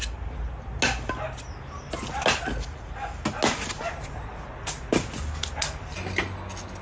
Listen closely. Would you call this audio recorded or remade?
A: recorded